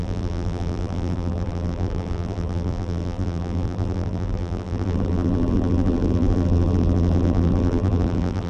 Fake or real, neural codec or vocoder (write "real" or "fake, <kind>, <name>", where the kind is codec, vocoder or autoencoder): fake, vocoder, BigVGAN v2